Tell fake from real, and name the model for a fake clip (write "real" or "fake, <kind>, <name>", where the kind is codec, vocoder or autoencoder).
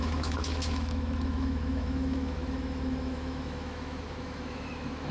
fake, autoencoder, DAC-VAE